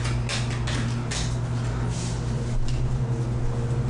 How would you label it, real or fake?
real